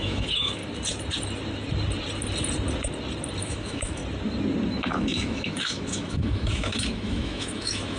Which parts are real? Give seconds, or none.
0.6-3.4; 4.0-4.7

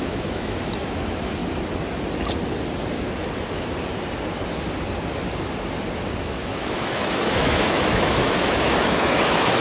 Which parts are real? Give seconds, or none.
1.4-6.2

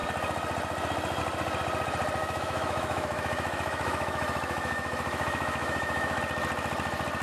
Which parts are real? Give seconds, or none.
0.0-2.2; 6.2-7.2

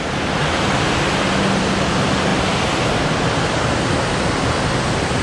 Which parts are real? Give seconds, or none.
0.0-5.2